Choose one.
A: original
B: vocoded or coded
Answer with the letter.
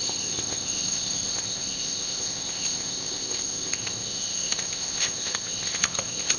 B